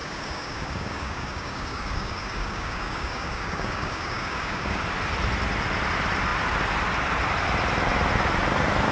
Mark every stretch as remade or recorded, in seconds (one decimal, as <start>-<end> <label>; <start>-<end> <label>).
0.0-4.8 remade; 4.8-8.9 recorded